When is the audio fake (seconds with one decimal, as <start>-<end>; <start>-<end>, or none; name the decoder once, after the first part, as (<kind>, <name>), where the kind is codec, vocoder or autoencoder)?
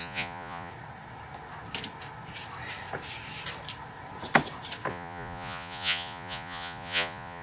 0.0-0.7 (vocoder, Vocos); 4.9-7.4